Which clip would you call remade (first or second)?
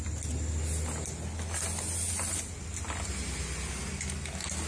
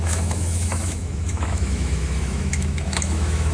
second